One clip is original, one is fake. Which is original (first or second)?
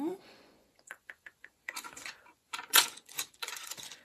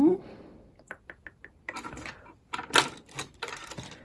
second